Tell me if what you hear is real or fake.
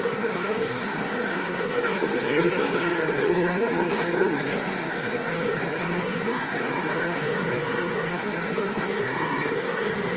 fake